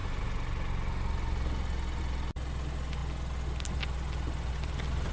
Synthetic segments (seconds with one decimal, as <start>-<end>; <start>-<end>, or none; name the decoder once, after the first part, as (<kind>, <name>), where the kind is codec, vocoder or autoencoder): none